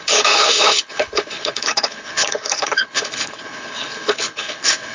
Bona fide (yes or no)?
no